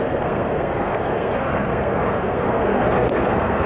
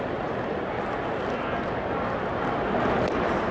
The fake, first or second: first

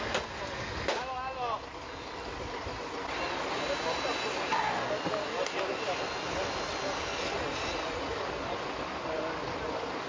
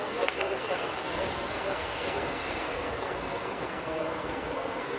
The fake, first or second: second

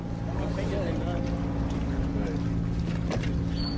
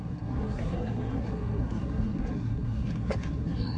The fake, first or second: second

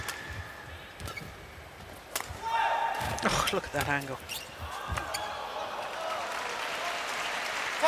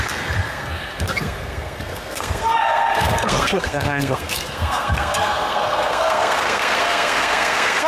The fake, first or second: second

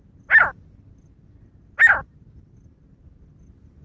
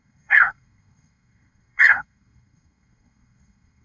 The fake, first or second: second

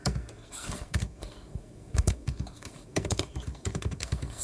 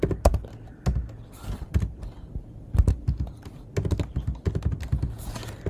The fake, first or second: first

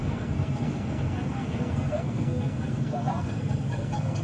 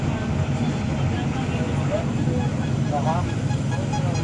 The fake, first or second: first